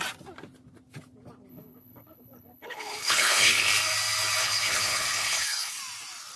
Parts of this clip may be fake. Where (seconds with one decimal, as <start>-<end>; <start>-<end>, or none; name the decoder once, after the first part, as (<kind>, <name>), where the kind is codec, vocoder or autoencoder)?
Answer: 1.5-3.7 (codec, HILCodec); 4.4-5.8